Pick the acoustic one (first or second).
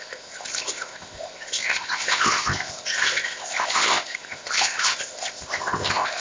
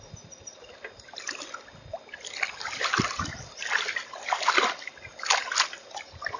second